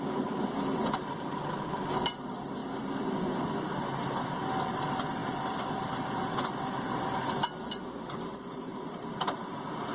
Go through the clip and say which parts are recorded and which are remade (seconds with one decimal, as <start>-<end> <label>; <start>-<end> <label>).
0.0-9.9 recorded